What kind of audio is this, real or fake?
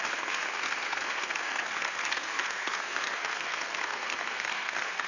fake